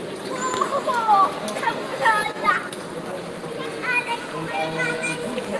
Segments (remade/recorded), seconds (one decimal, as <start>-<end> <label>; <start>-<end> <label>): 0.0-5.6 recorded